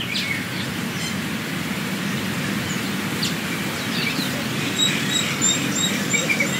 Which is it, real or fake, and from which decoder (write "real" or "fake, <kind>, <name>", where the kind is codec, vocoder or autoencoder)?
fake, vocoder, BigVGAN v2